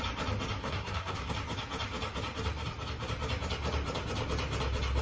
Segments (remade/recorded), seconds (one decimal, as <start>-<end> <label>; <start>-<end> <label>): 0.0-0.6 recorded; 0.6-1.3 remade; 1.3-5.0 recorded